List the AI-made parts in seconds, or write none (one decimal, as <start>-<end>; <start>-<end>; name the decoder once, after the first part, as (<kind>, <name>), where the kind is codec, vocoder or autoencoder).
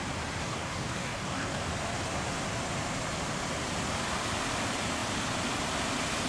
0.4-1.7 (codec, DAC)